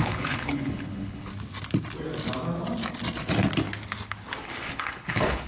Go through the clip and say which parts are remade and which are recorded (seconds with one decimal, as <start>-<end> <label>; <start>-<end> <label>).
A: 0.0-1.3 remade; 1.3-4.4 recorded; 4.4-5.5 remade

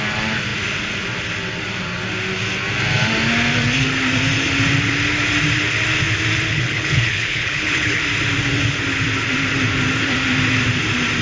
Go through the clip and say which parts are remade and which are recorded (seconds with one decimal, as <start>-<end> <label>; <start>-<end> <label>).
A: 0.0-6.5 recorded; 6.5-8.0 remade; 8.0-11.2 recorded

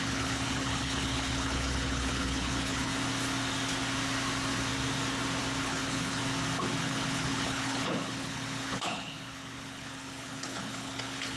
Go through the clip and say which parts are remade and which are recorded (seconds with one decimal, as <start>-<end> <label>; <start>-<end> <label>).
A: 0.0-2.9 remade; 2.9-5.6 recorded; 5.6-6.2 remade; 6.2-6.8 recorded; 6.8-11.4 remade

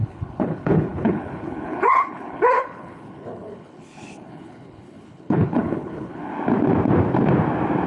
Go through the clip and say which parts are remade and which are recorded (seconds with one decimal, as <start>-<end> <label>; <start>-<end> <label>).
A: 0.0-6.3 remade; 6.3-7.9 recorded

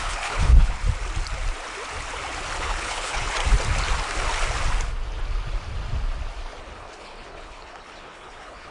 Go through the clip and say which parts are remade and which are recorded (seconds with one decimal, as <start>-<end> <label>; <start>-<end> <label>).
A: 0.0-0.8 remade; 0.8-2.6 recorded; 2.6-3.4 remade; 3.4-6.6 recorded; 6.6-8.7 remade